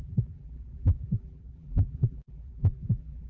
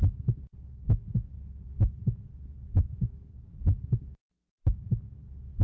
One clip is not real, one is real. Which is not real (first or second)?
first